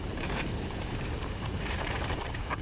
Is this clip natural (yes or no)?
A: no